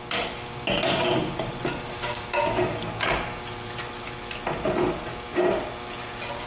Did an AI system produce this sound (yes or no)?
no